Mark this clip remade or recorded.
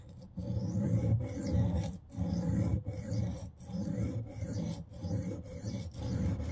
remade